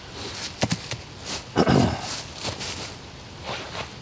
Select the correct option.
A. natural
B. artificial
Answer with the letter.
A